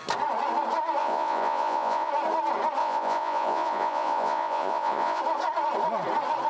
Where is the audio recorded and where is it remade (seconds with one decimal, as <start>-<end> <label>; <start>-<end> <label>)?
0.0-1.0 recorded; 1.0-2.1 remade; 2.1-2.8 recorded; 2.8-5.2 remade; 5.2-6.5 recorded